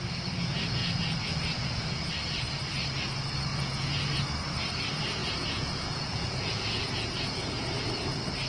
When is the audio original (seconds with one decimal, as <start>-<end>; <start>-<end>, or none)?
0.0-0.8; 2.1-3.5; 4.2-5.2; 7.7-8.5